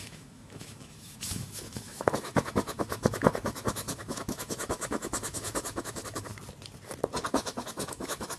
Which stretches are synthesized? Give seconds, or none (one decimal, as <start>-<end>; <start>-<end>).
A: 0.0-6.3; 7.3-8.4